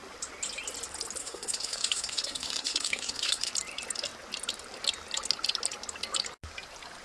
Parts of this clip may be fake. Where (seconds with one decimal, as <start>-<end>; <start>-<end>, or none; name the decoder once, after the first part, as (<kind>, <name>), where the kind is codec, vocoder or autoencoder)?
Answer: 1.2-3.5 (codec, SNAC)